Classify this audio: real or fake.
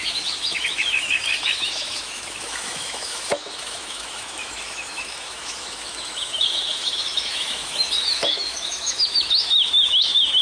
fake